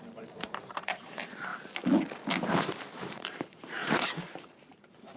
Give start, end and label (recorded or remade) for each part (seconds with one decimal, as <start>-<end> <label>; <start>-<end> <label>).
0.0-1.5 remade; 1.5-2.5 recorded; 2.5-5.2 remade